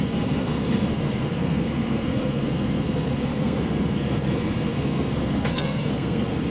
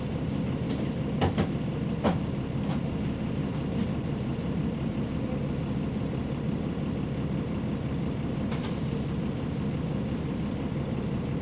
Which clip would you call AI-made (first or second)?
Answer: first